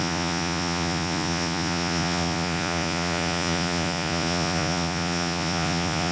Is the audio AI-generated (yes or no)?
yes